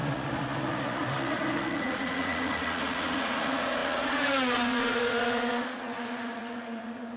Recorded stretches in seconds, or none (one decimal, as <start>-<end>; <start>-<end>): none